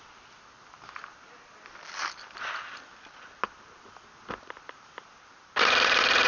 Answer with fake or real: real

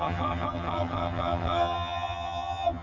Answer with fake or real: fake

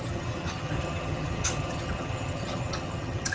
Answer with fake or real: fake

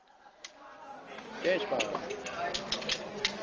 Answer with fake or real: real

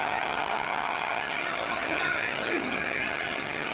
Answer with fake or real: fake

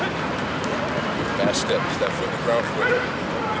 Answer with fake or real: real